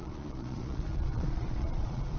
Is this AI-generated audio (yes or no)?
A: yes